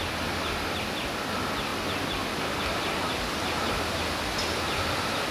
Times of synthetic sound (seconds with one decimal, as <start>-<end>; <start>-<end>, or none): none